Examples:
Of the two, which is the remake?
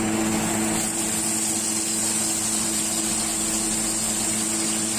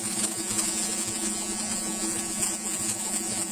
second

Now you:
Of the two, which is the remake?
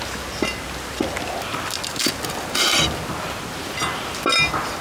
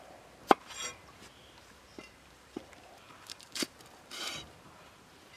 second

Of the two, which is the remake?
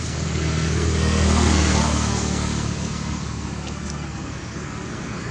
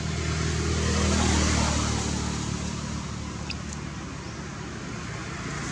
first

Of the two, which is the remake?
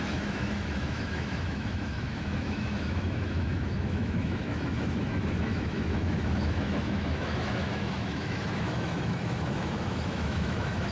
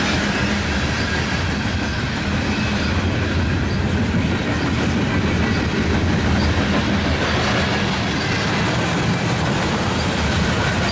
first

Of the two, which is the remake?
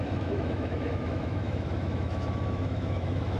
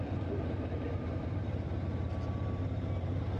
first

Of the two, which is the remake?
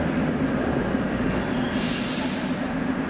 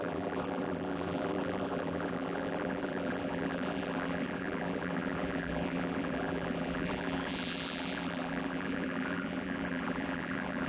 second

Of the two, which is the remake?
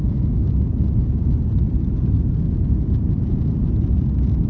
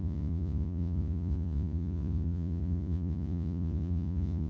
second